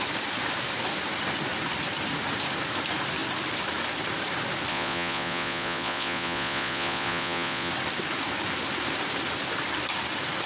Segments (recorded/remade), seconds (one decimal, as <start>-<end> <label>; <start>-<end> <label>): 0.0-4.7 recorded; 4.7-7.7 remade; 7.7-10.5 recorded

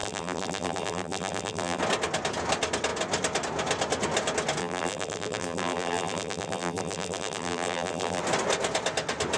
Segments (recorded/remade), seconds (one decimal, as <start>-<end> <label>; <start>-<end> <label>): 0.0-1.8 remade; 1.8-4.6 recorded; 4.6-8.2 remade; 8.2-9.4 recorded